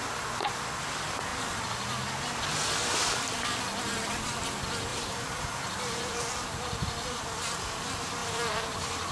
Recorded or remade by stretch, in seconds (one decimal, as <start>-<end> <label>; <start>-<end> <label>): 0.0-4.9 recorded; 4.9-7.2 remade; 7.2-8.2 recorded; 8.2-9.1 remade